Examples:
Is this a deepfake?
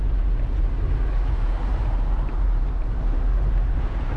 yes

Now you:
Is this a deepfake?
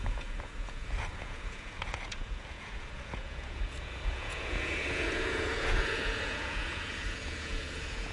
yes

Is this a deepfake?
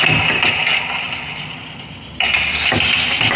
no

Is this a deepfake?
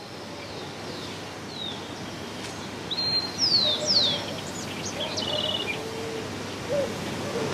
no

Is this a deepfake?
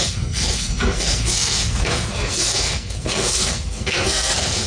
yes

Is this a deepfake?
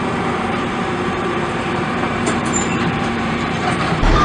yes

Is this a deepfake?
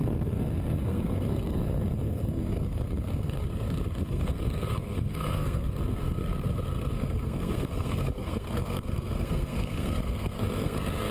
yes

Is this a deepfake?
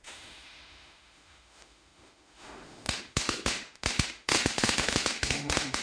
yes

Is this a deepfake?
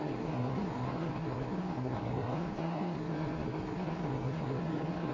yes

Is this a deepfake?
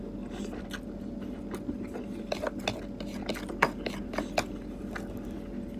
no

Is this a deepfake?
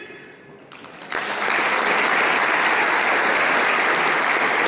no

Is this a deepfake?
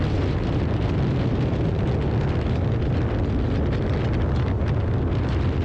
no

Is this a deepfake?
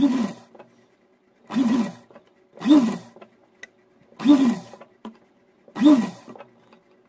no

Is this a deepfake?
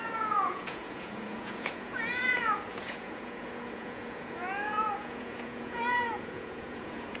yes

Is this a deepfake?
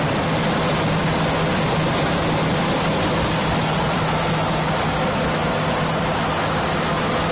no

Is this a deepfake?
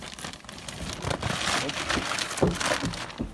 no